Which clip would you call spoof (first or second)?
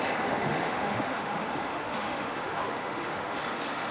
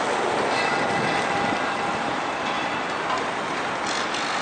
first